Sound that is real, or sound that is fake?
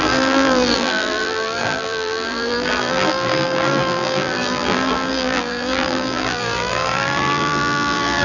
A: fake